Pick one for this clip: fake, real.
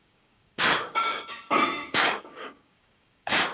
fake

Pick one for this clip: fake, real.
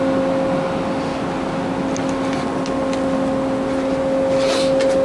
real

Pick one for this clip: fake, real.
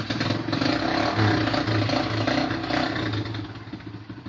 real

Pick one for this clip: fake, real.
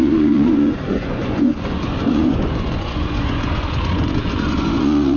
fake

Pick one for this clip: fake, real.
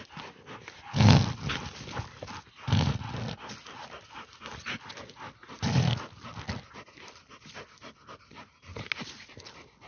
real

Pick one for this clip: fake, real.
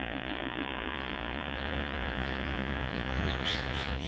fake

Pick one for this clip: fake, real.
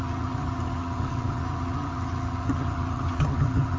fake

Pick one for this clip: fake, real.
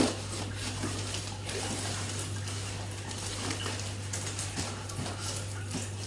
real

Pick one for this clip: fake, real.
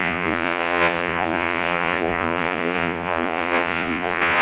fake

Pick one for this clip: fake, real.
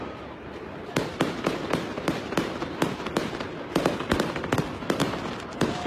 fake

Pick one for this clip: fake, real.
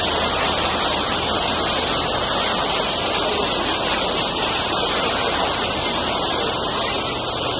real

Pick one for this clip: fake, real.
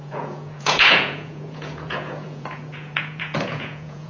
fake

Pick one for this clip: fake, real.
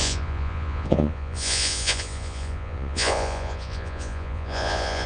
fake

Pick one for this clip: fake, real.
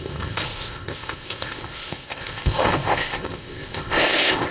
fake